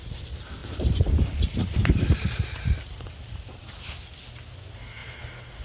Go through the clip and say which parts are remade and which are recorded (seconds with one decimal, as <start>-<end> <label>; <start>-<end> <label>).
0.0-0.6 recorded; 0.6-4.0 remade; 4.0-5.6 recorded